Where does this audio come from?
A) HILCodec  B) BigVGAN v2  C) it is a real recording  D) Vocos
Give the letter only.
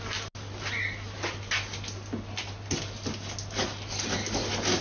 C